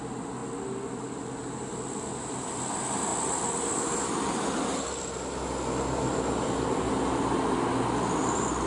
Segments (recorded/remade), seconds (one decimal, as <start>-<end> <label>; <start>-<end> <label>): 0.0-8.7 recorded